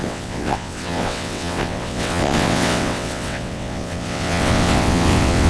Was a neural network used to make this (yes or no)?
yes